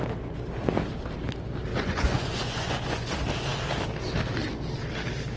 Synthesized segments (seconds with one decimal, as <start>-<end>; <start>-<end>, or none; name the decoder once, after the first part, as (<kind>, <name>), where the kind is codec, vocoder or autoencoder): 1.7-3.1 (vocoder, Vocos)